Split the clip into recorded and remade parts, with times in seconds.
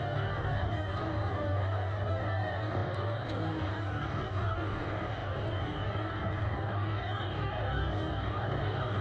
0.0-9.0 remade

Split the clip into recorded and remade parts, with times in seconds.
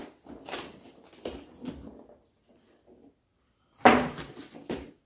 0.0-5.1 recorded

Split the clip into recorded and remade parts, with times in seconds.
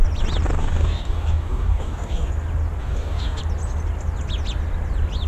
0.0-0.6 recorded; 0.6-2.3 remade; 2.3-2.8 recorded; 2.8-3.4 remade; 3.4-5.3 recorded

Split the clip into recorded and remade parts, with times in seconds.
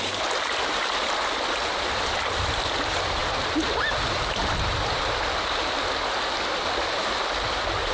0.0-7.9 recorded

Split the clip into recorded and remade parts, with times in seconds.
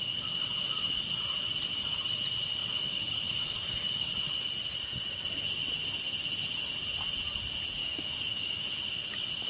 0.0-2.6 recorded; 2.6-4.1 remade; 4.1-7.8 recorded; 7.8-8.6 remade; 8.6-9.5 recorded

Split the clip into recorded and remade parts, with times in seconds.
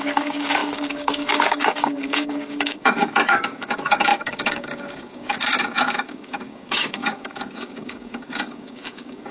0.0-9.3 remade